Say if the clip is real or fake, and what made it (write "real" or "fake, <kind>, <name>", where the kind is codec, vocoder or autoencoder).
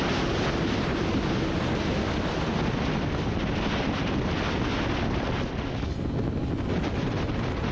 real